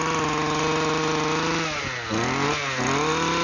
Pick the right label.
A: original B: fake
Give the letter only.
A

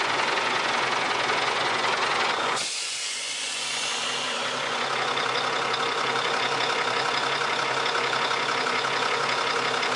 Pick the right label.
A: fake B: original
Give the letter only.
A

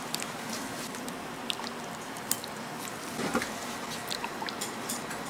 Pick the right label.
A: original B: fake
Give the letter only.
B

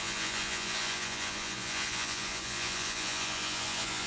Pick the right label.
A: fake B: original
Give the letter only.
A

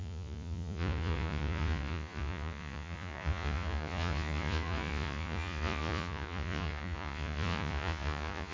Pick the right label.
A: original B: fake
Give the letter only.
B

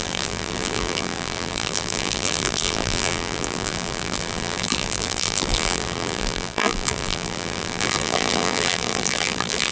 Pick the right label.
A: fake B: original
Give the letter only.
A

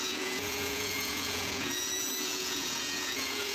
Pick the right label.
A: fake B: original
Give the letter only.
A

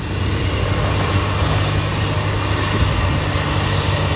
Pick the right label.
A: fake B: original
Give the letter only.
B